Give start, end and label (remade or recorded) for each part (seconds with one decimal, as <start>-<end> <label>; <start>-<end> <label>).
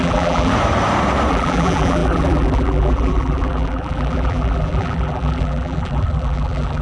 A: 0.0-0.5 remade; 0.5-1.3 recorded; 1.3-6.8 remade